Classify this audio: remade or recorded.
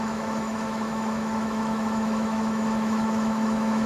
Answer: remade